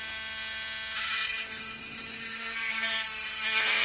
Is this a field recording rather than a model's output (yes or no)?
yes